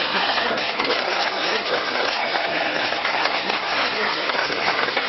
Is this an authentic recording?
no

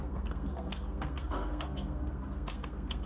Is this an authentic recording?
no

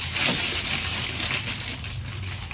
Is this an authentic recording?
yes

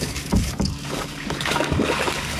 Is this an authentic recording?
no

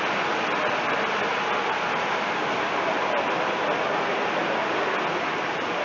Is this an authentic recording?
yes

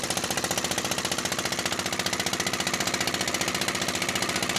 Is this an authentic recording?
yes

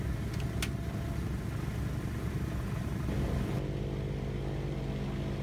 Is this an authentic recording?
yes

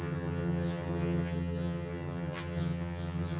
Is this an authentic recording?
no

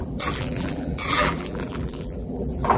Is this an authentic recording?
no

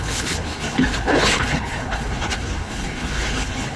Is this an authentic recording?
no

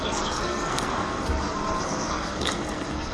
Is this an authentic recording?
no